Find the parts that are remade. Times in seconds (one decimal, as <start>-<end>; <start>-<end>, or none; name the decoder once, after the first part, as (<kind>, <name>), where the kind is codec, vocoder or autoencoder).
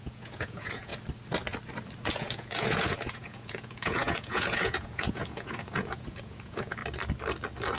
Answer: 0.0-0.9 (vocoder, Vocos); 2.1-6.8